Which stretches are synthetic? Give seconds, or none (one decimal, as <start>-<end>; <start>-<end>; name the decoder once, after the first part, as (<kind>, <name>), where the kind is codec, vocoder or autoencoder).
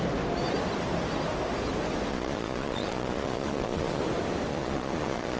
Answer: 2.1-4.0 (vocoder, Vocos); 4.5-5.4